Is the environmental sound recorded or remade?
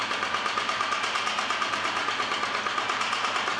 recorded